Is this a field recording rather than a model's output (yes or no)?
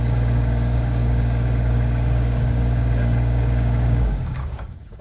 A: no